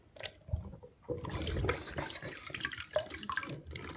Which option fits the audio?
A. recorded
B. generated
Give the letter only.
A